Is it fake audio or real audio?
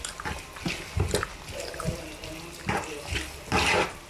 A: real